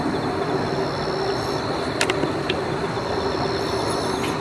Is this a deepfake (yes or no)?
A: no